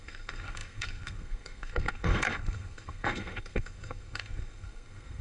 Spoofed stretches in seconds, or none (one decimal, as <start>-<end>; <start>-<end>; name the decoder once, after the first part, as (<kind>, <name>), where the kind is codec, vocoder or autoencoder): 0.0-5.2 (codec, SNAC)